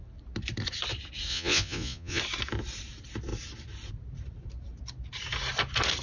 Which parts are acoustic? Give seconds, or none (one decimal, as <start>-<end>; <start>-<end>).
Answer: 0.0-1.3; 2.2-6.0